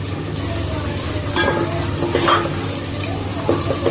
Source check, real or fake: real